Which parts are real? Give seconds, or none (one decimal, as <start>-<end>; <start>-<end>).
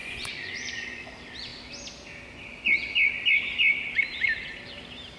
1.1-5.2